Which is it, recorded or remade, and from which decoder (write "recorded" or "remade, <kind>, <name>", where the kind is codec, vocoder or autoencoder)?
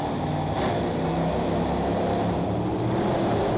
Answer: recorded